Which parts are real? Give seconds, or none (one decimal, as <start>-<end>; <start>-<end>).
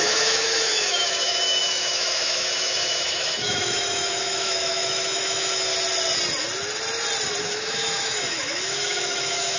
5.7-7.4